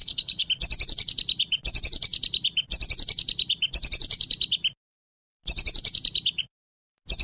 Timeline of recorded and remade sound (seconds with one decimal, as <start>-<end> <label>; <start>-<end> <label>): 0.0-0.5 remade; 0.5-7.2 recorded